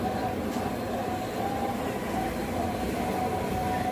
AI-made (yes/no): no